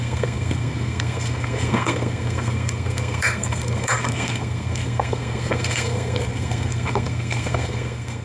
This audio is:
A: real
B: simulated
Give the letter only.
B